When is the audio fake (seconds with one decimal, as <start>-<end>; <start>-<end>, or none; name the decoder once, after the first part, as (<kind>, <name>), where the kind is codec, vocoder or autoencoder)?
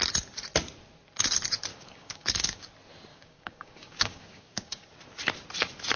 1.7-2.7 (codec, DAC); 3.1-4.8